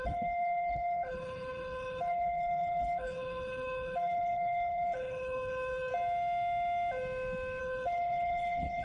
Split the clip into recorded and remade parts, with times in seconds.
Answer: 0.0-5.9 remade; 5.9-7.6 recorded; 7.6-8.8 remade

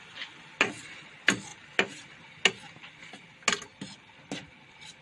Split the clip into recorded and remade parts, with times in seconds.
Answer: 0.0-5.0 recorded

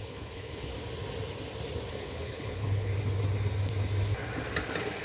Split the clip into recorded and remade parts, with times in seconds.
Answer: 0.0-0.7 remade; 0.7-1.9 recorded; 1.9-2.9 remade; 2.9-5.0 recorded

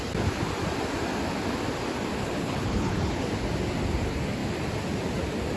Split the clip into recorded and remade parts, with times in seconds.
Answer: 0.0-2.2 recorded; 2.2-3.2 remade; 3.2-5.6 recorded

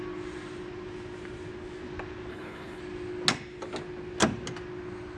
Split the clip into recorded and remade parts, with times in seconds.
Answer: 0.0-2.3 recorded; 2.3-2.8 remade; 2.8-5.2 recorded